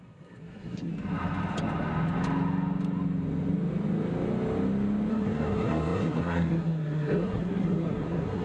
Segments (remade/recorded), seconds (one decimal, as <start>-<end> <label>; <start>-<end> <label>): 0.0-0.9 remade; 0.9-5.1 recorded; 5.1-8.4 remade